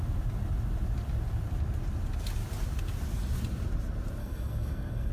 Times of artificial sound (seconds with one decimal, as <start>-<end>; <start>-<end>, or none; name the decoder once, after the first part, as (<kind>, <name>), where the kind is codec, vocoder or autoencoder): 4.2-5.1 (codec, SNAC)